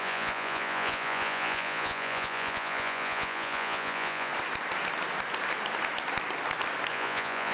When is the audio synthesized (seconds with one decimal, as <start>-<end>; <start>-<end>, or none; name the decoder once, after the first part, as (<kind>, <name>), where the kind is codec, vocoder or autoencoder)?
0.0-4.3 (vocoder, Vocos); 6.9-7.5